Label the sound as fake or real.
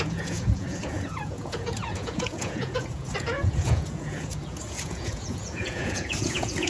fake